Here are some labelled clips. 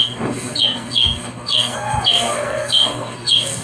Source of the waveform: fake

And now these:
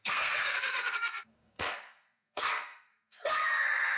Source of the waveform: fake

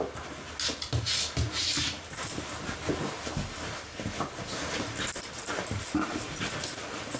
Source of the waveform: real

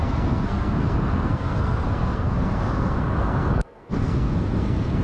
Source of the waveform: fake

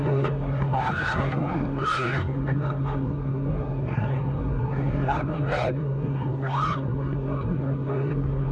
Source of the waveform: fake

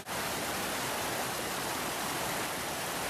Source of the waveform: real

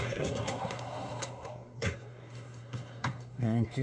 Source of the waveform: fake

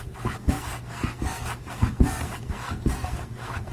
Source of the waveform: fake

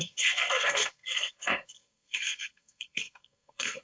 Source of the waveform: fake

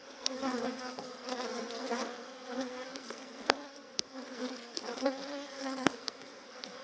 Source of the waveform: fake